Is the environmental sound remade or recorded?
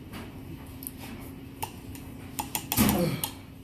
recorded